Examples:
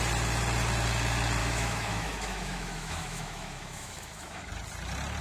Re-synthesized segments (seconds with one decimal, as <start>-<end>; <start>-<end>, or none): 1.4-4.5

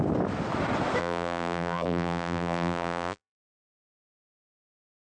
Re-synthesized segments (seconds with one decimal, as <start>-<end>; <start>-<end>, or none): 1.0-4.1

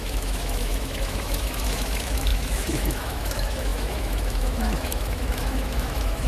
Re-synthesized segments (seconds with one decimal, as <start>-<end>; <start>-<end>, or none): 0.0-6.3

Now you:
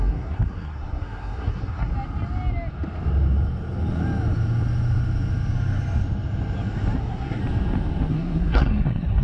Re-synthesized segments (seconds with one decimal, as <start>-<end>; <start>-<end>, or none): 0.0-1.9; 7.0-7.4; 8.1-9.2

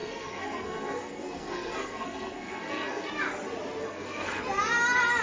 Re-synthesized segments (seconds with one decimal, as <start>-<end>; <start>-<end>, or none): 0.0-3.1; 3.8-4.4